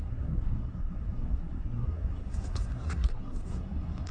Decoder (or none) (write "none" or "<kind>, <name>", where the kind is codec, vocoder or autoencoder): codec, SNAC